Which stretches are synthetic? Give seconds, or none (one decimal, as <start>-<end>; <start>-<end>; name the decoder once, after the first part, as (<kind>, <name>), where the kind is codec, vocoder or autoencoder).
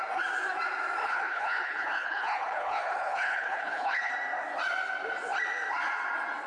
1.0-4.1 (codec, HILCodec)